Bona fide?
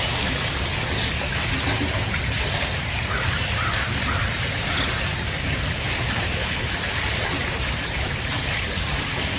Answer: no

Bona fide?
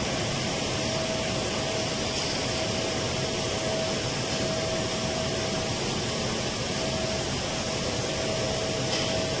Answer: yes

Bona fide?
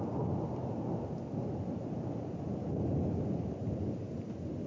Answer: yes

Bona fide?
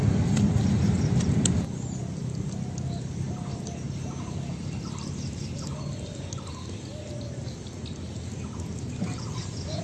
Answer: yes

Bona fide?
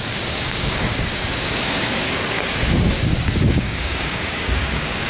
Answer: no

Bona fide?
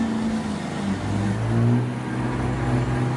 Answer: yes